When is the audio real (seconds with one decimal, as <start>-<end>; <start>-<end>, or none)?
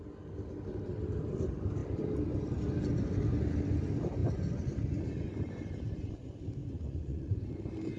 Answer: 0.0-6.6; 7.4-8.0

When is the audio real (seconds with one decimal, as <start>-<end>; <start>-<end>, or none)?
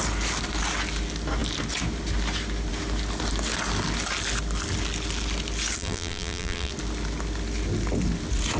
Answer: 0.0-5.8; 6.7-8.6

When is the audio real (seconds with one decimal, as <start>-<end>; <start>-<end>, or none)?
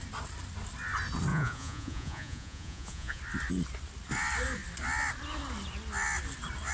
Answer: 0.0-1.3; 3.2-6.7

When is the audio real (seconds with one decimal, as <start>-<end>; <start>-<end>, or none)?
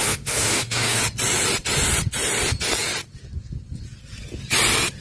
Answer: 1.0-5.0